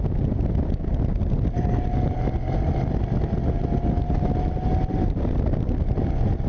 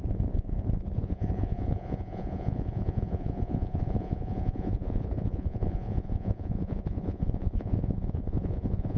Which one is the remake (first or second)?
second